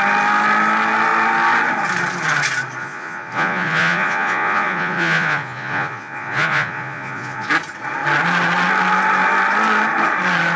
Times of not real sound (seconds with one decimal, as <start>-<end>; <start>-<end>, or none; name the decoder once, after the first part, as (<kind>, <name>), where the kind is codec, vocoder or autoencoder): 2.8-7.5 (vocoder, Vocos)